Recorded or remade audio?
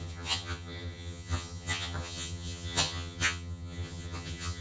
remade